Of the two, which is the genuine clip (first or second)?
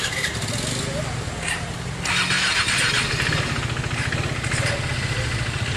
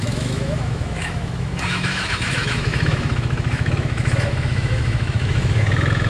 first